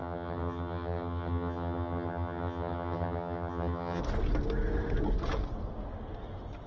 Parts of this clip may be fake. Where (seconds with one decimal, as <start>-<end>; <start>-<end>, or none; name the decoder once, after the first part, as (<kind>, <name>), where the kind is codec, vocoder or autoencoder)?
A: 0.0-4.0 (vocoder, HiFi-GAN)